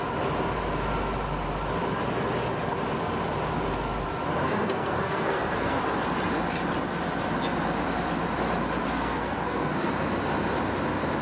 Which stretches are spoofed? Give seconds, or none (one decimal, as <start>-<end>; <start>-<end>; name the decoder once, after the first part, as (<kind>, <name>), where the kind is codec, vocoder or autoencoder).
4.4-5.8 (codec, SNAC); 8.8-9.9